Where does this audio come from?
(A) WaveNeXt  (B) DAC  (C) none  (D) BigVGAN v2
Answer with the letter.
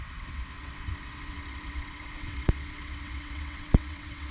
A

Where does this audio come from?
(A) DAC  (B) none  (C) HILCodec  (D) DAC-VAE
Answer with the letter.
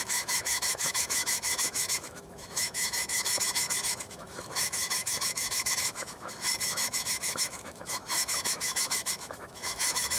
D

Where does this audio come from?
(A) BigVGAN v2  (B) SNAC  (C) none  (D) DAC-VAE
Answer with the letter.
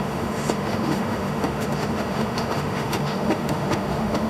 D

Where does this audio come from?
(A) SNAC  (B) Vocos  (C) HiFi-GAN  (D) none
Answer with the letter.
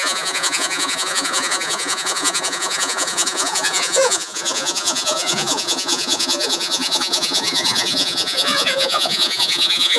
B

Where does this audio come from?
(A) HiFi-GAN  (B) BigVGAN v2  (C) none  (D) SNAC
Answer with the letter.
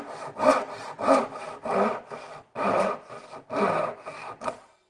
C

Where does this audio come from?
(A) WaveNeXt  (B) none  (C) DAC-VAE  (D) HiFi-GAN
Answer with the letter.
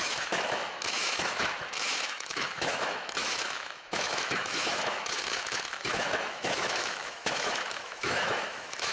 C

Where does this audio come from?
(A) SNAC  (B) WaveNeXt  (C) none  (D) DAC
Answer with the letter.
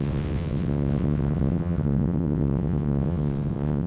B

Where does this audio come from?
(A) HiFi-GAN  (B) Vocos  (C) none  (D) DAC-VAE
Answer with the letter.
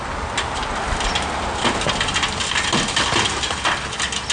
C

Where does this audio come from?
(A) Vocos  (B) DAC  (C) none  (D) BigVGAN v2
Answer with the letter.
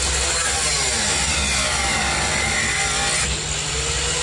C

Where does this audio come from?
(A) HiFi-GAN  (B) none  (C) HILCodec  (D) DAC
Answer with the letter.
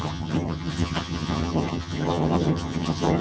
A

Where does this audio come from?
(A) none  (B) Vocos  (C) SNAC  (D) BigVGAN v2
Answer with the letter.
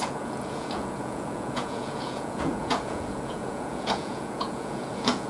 B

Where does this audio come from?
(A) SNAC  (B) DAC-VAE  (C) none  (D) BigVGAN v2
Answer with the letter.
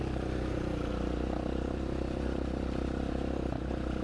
C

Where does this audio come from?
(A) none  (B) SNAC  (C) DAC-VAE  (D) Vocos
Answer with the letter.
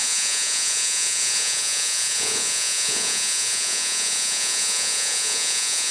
D